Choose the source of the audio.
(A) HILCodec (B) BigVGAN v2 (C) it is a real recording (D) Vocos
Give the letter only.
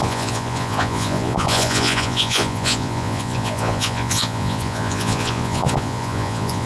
D